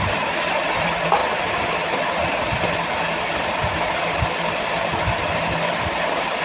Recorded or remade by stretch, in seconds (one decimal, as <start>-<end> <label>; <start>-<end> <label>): 0.0-1.2 remade; 1.2-5.0 recorded; 5.0-6.4 remade